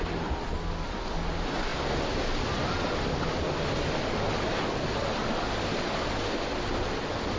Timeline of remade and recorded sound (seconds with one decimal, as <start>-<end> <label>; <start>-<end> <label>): 0.0-7.4 recorded